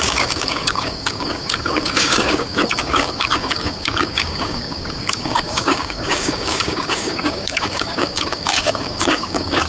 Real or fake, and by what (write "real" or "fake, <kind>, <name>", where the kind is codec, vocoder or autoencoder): fake, codec, DAC